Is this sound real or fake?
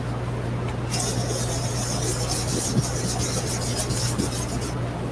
real